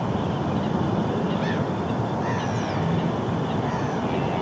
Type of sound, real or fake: real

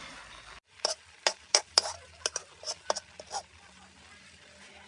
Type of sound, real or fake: fake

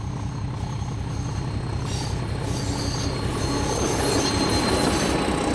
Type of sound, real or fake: real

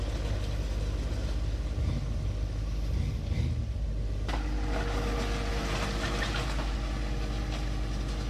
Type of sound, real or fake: real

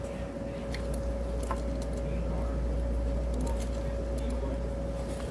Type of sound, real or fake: real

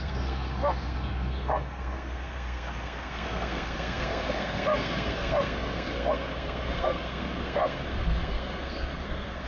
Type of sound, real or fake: fake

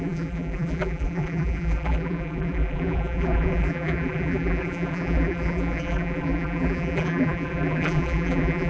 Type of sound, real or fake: fake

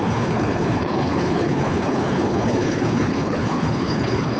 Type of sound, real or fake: fake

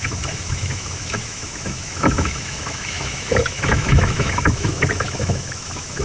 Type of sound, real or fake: fake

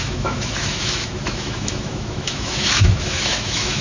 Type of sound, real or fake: fake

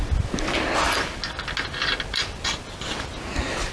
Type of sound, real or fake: real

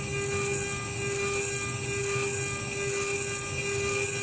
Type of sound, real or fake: real